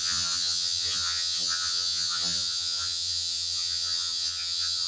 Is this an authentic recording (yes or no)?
no